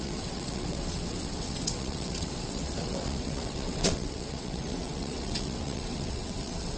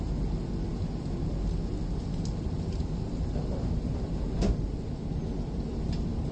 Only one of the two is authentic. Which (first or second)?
second